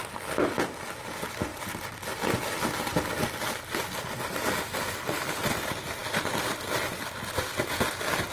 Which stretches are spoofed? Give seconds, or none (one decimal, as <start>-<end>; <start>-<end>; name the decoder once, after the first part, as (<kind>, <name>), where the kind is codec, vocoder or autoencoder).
none